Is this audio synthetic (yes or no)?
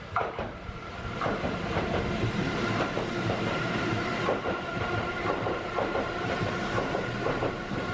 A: yes